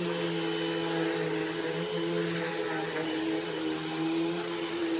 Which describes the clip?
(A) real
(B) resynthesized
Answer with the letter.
A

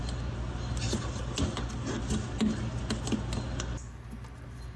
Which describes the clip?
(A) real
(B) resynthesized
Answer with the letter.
A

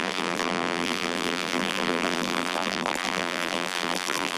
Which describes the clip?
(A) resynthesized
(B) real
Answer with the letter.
A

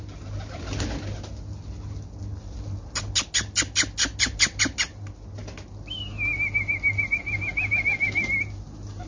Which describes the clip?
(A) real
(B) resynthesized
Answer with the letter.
A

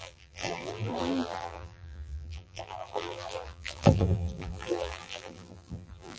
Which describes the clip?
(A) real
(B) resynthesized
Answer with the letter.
B